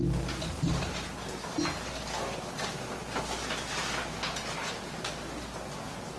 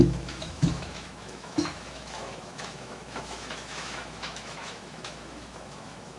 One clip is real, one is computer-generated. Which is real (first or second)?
first